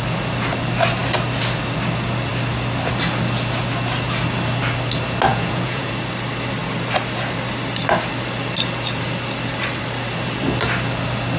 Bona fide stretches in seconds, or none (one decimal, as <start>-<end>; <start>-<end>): 0.0-5.3; 5.9-11.4